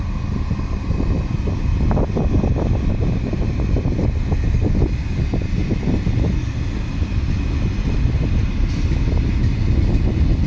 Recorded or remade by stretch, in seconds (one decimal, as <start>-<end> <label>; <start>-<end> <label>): 0.0-10.5 recorded